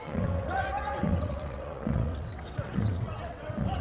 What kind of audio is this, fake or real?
fake